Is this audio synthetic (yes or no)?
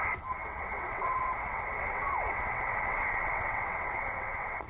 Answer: yes